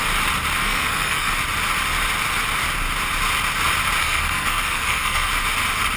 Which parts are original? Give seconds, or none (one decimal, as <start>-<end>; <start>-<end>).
0.0-0.6; 1.3-4.0; 5.3-6.0